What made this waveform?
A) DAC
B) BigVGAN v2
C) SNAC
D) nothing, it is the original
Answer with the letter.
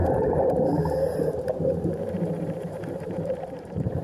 B